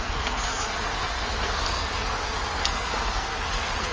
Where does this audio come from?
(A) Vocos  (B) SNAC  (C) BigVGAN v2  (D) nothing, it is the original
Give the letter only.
B